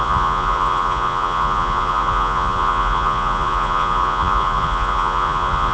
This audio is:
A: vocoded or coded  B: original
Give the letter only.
A